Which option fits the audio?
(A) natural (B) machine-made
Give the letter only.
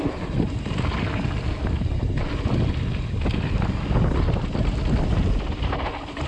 A